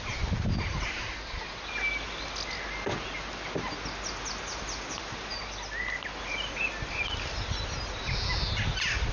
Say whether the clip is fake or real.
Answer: real